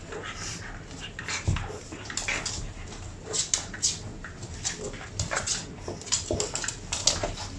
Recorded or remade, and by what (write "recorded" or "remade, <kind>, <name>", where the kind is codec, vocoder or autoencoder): recorded